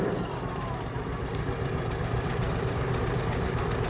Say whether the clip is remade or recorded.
remade